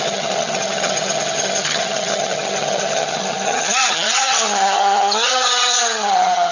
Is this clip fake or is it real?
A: fake